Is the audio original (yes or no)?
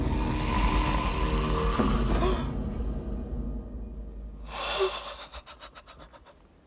yes